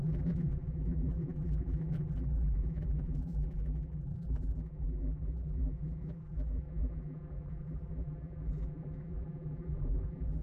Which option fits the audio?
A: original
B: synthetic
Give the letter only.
B